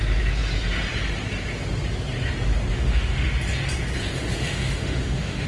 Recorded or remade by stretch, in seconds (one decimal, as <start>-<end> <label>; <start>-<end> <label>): 0.0-2.7 recorded; 2.7-3.3 remade; 3.3-4.1 recorded; 4.1-5.5 remade